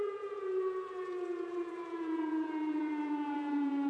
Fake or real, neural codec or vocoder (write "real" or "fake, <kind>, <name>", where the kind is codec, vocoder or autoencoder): fake, vocoder, Vocos